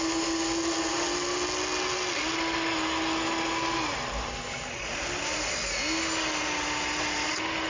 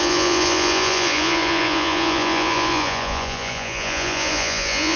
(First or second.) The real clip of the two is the first